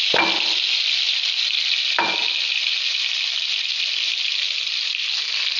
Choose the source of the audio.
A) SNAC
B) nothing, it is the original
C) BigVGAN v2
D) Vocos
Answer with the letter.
B